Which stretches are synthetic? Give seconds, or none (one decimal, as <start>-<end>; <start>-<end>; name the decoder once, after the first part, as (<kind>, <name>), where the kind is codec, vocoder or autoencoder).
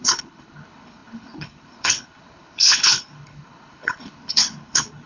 0.0-5.1 (codec, HILCodec)